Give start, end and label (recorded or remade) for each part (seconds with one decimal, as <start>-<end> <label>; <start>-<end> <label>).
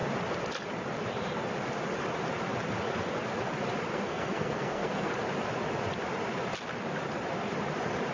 0.0-3.9 recorded; 3.9-5.1 remade; 5.1-8.1 recorded